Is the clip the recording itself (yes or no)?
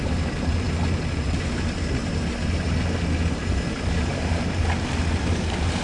yes